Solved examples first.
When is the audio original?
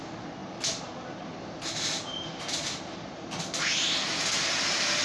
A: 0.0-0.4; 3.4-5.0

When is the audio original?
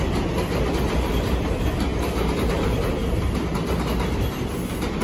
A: 0.0-5.0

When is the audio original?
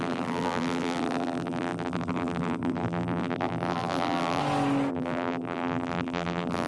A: 4.4-4.9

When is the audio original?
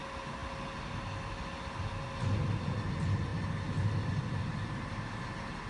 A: 0.0-5.7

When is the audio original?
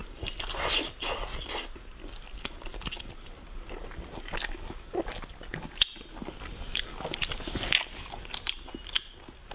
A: 0.7-9.5